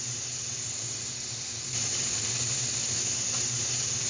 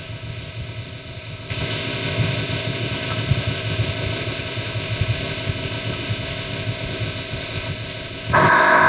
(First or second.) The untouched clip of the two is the first